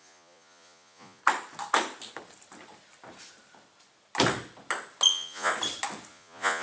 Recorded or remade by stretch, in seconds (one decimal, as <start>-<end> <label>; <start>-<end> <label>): 0.0-1.2 remade; 1.2-5.1 recorded; 5.1-5.5 remade; 5.5-6.1 recorded; 6.1-6.6 remade